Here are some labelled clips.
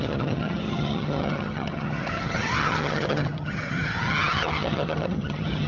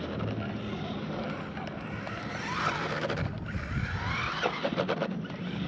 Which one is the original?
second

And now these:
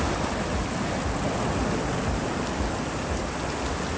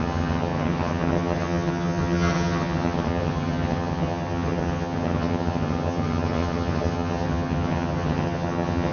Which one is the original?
first